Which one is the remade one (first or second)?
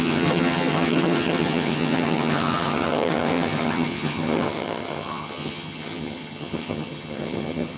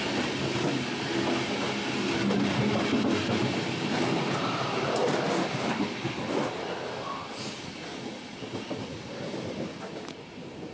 first